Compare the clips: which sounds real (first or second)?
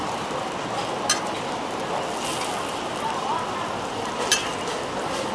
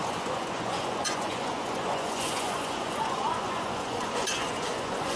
first